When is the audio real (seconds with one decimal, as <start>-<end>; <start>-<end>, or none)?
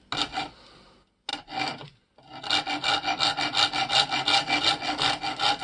0.0-5.6